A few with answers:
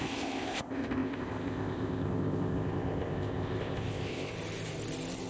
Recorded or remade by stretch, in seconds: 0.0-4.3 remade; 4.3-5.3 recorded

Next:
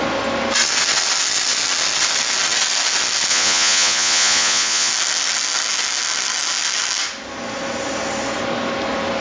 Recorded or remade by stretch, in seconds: 0.0-3.3 recorded; 3.3-4.9 remade; 4.9-9.2 recorded

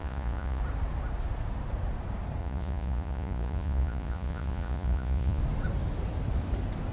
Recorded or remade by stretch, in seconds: 0.0-0.6 remade; 0.6-2.4 recorded; 2.4-5.4 remade; 5.4-6.9 recorded

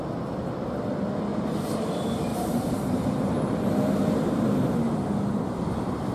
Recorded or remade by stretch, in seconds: 0.0-1.3 recorded; 1.3-1.8 remade; 1.8-2.3 recorded; 2.3-5.1 remade; 5.1-6.1 recorded

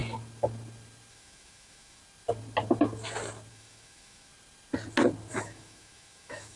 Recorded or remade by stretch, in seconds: 0.0-1.1 recorded; 1.1-2.0 remade; 2.0-3.5 recorded; 3.5-4.3 remade; 4.3-5.3 recorded; 5.3-6.6 remade